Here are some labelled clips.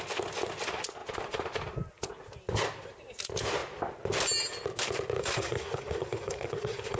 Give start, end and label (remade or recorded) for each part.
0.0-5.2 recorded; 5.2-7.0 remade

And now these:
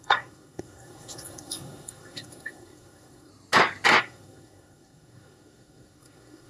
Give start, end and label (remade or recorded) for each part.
0.0-3.3 remade; 3.3-4.0 recorded; 4.0-6.5 remade

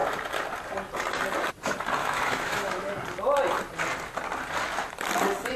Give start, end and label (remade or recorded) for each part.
0.0-2.0 recorded; 2.0-2.9 remade; 2.9-5.6 recorded

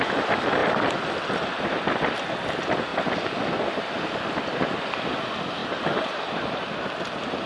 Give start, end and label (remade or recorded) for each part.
0.0-0.6 recorded; 0.6-1.9 remade; 1.9-5.6 recorded; 5.6-6.8 remade; 6.8-7.5 recorded